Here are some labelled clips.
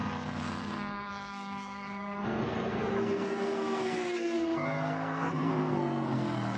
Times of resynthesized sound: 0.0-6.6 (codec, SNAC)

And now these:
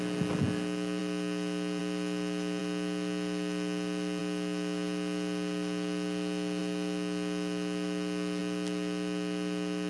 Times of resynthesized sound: none